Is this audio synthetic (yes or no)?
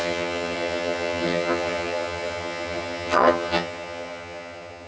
yes